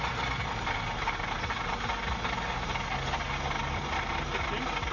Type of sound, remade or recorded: recorded